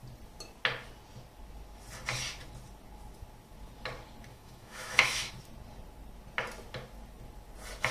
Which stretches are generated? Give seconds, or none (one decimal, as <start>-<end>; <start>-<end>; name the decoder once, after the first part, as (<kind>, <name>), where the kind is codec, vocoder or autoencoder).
4.3-5.3 (autoencoder, DAC-VAE)